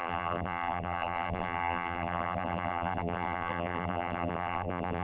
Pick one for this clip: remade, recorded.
remade